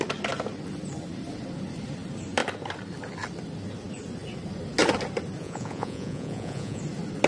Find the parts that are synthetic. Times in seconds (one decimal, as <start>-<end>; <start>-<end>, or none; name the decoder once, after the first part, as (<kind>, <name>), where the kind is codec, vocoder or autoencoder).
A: 5.4-6.8 (vocoder, Vocos)